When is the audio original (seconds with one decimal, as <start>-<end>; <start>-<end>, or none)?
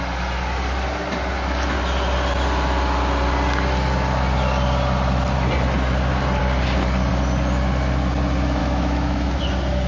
0.0-8.6; 9.4-9.9